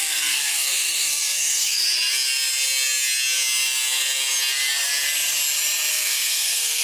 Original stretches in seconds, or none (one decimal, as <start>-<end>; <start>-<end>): 1.8-5.9